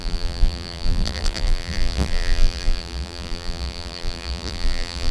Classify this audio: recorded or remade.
remade